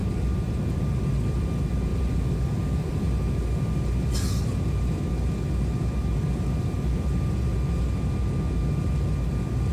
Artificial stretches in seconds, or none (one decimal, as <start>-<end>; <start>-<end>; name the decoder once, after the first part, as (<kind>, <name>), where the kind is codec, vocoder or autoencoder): 0.0-0.6 (vocoder, BigVGAN v2); 1.9-3.2